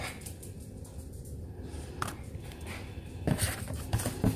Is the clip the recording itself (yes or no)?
yes